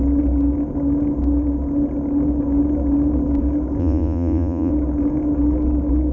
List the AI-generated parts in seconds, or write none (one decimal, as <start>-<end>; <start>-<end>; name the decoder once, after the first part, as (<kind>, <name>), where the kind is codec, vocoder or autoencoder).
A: 3.8-4.7 (vocoder, Vocos)